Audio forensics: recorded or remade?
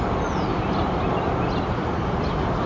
recorded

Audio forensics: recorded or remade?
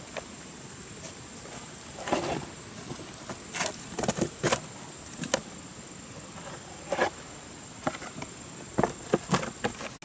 recorded